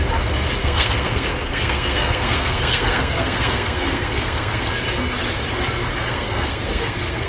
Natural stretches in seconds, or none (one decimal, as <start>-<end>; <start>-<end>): 0.0-0.6; 4.7-5.9